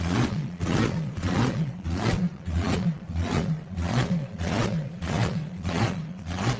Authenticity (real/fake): fake